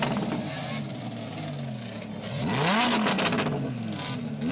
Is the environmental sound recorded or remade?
recorded